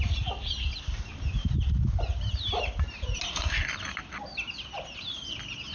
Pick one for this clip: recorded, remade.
recorded